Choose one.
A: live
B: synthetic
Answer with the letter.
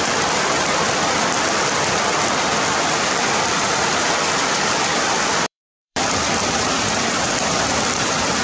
B